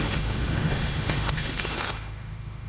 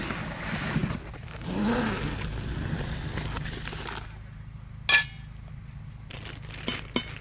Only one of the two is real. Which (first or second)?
second